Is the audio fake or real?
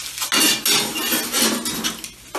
real